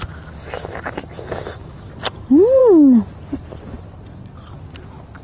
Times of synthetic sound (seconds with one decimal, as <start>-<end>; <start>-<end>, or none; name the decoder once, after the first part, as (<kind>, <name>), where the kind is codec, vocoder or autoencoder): 0.4-1.9 (autoencoder, DAC-VAE)

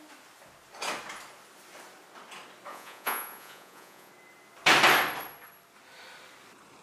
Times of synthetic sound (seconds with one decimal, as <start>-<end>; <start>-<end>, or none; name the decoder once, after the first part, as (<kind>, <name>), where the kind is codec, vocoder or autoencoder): 2.7-4.1 (vocoder, Vocos)

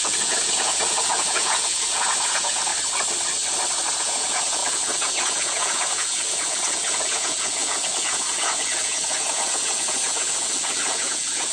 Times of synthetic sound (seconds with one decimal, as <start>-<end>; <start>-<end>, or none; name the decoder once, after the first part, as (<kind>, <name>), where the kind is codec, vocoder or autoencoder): 0.0-2.7 (vocoder, Vocos); 4.0-11.5

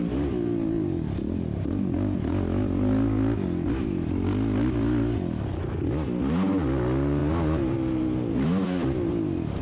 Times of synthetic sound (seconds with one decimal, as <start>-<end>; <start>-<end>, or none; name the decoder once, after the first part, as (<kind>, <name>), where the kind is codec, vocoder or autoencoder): none

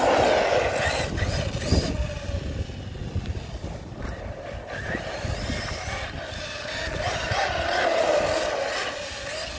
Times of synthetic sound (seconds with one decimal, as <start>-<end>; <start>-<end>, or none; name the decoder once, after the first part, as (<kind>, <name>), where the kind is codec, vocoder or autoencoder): none

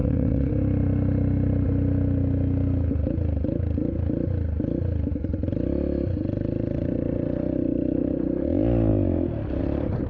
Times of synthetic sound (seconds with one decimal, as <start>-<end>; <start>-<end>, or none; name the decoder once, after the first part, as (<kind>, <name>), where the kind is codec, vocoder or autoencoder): 0.0-0.5 (vocoder, WaveNeXt)

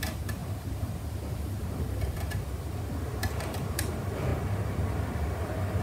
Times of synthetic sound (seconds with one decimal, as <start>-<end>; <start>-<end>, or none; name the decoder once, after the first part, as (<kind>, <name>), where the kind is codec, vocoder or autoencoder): 0.0-4.3 (vocoder, BigVGAN v2)